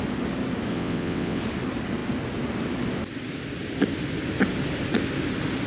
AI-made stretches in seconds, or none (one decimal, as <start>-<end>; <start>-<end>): 0.7-1.4